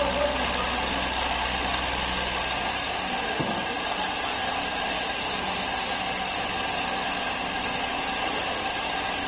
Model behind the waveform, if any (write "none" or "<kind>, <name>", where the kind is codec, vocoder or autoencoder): none